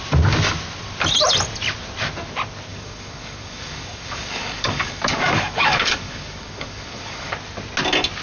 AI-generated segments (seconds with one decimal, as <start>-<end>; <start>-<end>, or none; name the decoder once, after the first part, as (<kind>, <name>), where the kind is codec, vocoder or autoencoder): 2.7-7.3 (codec, DAC)